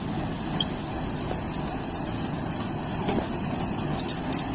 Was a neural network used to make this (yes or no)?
no